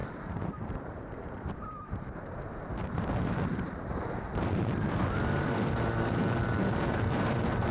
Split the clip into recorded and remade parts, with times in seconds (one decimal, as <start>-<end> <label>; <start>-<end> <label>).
0.0-7.7 remade